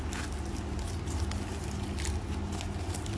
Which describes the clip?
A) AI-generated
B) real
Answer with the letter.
B